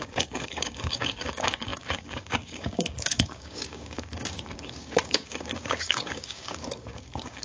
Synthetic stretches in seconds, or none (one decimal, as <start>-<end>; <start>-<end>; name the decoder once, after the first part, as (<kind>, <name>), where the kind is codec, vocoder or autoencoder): 0.0-7.4 (codec, DAC)